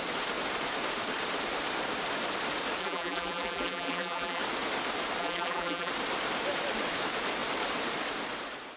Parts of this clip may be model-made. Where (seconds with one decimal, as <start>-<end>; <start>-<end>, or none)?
2.8-4.4; 5.2-5.9

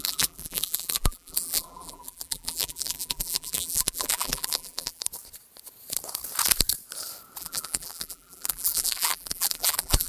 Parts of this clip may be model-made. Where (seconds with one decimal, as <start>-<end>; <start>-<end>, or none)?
0.0-5.0; 7.4-10.1